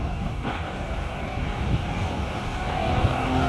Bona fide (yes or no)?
no